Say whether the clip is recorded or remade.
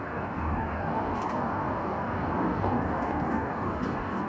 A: remade